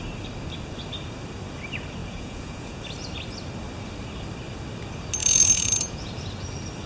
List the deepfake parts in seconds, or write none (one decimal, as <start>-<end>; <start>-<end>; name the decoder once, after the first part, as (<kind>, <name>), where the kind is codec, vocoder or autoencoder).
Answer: 2.0-2.8 (vocoder, Vocos); 5.2-6.1